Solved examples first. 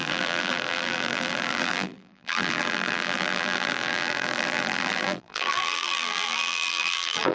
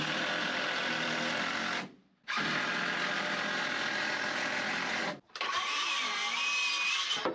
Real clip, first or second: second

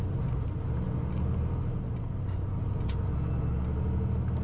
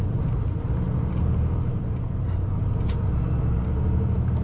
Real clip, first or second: first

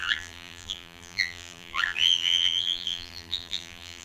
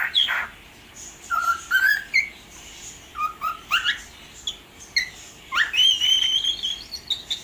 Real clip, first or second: second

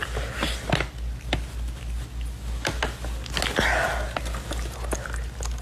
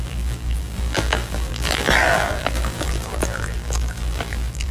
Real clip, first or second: first